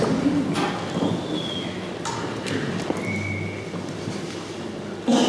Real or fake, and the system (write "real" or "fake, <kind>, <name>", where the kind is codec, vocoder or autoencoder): real